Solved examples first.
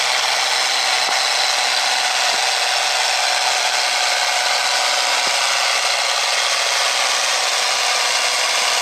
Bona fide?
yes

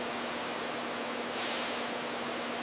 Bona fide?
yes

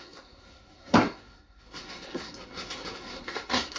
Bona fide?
no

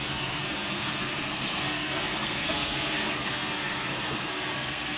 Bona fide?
no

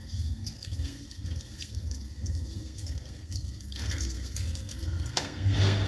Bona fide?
no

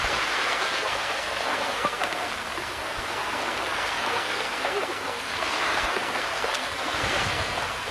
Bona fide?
no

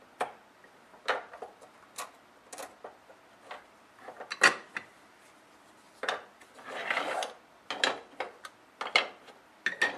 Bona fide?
yes